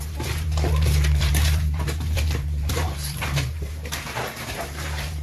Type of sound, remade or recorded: remade